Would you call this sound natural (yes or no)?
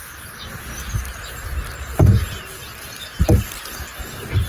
yes